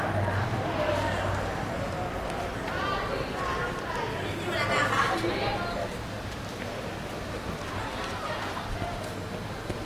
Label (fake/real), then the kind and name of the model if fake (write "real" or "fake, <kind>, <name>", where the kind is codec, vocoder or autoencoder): real